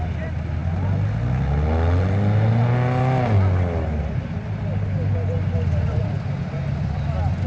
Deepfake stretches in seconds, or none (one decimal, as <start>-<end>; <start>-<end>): none